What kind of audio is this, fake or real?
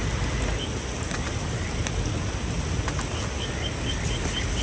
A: real